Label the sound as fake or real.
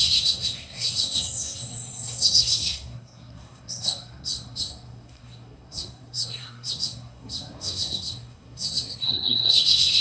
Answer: fake